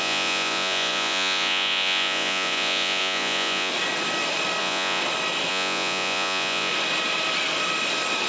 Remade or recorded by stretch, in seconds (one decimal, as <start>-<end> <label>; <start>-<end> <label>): 0.0-3.7 remade; 3.7-4.6 recorded; 4.6-5.0 remade; 5.0-5.5 recorded; 5.5-6.7 remade; 6.7-8.3 recorded